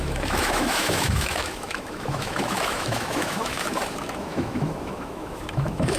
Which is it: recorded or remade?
remade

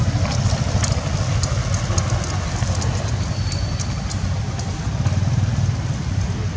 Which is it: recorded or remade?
recorded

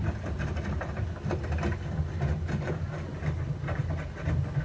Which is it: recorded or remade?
recorded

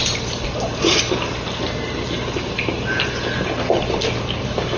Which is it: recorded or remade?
recorded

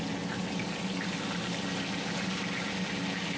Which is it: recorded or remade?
recorded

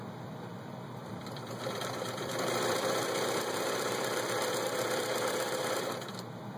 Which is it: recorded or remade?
remade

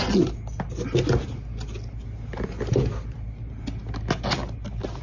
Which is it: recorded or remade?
recorded